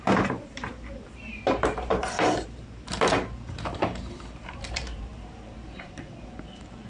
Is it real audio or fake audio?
fake